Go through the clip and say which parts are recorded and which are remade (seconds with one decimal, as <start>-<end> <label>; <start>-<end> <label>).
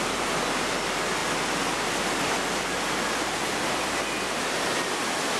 0.0-5.4 recorded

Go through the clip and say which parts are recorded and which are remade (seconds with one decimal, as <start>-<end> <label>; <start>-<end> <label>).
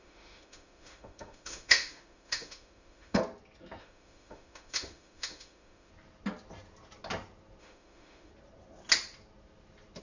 0.0-3.2 remade; 3.2-3.8 recorded; 3.8-5.9 remade; 5.9-7.6 recorded; 7.6-8.3 remade; 8.3-10.0 recorded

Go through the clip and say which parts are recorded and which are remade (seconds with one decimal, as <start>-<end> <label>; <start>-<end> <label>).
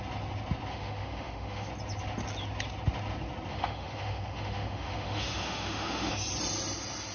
0.0-0.7 recorded; 0.7-1.7 remade; 1.7-3.5 recorded; 3.5-6.1 remade; 6.1-7.1 recorded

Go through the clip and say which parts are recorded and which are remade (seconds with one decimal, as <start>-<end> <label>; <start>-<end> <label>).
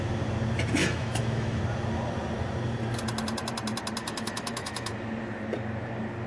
0.0-0.8 recorded; 0.8-1.6 remade; 1.6-4.0 recorded; 4.0-4.9 remade; 4.9-6.3 recorded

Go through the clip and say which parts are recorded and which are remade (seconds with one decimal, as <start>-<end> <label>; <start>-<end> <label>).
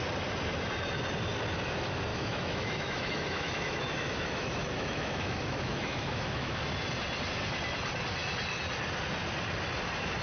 0.0-2.1 recorded; 2.1-6.6 remade; 6.6-10.2 recorded